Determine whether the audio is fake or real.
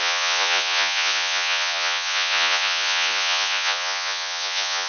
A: fake